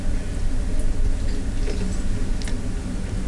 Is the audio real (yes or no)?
yes